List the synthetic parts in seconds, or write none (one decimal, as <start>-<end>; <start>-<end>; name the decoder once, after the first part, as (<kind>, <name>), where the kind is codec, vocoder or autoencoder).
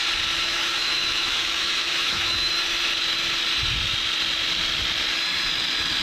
0.4-2.5 (autoencoder, DAC-VAE)